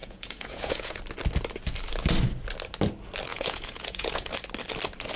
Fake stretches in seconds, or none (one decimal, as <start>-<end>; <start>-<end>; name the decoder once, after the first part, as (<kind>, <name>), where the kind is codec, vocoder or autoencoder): 0.0-1.0 (vocoder, Vocos); 3.3-4.3